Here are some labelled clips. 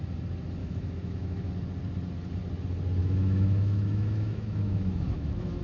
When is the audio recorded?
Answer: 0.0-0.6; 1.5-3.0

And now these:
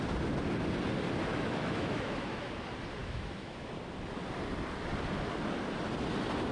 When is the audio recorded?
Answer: 0.0-1.3; 2.5-3.0; 3.7-6.5

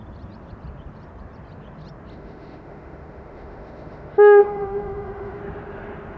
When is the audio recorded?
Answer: 0.0-2.1; 5.4-6.2